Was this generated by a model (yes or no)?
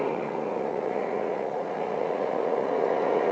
yes